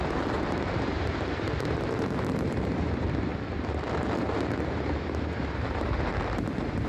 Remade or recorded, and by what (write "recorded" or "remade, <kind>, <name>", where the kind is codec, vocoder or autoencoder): remade, vocoder, BigVGAN v2